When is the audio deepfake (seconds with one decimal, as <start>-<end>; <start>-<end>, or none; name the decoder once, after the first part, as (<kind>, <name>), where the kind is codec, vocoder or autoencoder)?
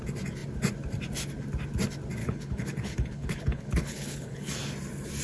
2.2-4.5 (codec, HILCodec)